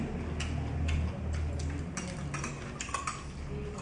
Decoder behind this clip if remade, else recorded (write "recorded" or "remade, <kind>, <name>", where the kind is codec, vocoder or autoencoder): recorded